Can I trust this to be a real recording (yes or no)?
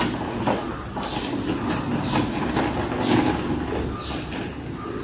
yes